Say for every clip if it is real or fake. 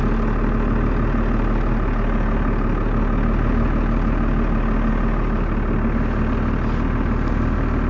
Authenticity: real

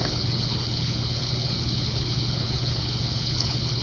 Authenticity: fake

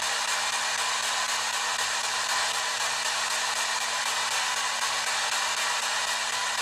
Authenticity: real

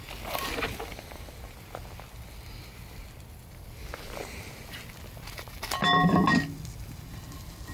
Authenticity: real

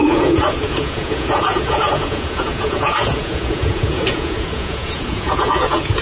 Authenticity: fake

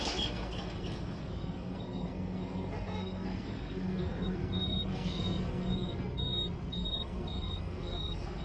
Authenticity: fake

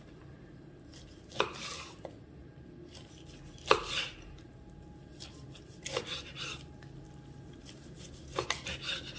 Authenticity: real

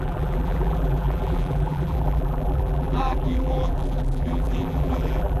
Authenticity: fake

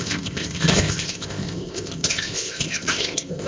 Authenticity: fake